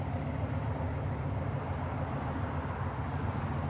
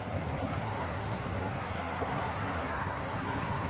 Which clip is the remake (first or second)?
second